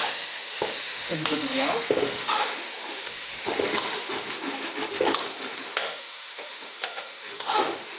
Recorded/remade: remade